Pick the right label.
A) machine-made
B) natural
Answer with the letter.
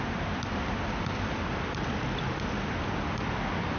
B